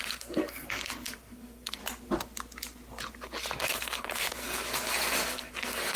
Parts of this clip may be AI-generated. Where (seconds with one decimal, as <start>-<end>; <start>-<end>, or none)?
0.0-1.8; 3.6-6.0